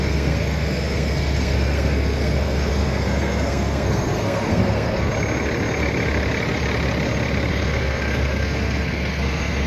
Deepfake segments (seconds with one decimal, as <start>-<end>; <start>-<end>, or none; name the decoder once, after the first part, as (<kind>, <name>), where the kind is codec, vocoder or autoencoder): 0.0-5.1 (codec, SNAC); 7.5-9.7